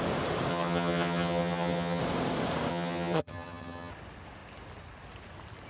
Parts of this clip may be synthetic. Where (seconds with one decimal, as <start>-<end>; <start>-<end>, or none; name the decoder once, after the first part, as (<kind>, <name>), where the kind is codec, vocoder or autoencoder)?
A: 0.5-2.0 (vocoder, HiFi-GAN); 2.7-3.9